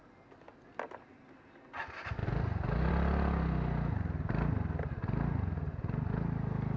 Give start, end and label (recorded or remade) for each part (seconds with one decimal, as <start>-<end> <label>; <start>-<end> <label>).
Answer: 0.0-6.8 recorded